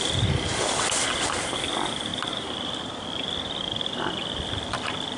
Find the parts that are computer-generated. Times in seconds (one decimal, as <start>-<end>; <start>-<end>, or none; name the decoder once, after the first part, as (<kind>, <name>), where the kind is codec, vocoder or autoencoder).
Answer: 2.1-3.9 (vocoder, BigVGAN v2)